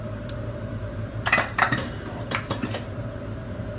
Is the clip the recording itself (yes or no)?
no